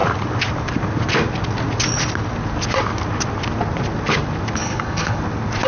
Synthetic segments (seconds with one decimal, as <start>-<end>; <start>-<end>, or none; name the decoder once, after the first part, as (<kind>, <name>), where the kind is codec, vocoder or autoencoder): 4.6-5.2 (codec, HILCodec)